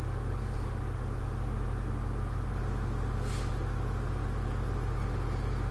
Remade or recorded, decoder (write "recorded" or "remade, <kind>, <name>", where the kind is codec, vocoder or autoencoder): recorded